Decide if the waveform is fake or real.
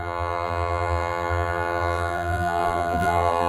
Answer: fake